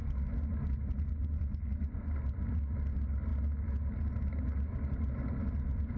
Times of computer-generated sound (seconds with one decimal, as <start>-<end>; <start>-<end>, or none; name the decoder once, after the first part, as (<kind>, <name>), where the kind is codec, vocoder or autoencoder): none